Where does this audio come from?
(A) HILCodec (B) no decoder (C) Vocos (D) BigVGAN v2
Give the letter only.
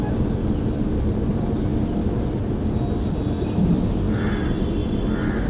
B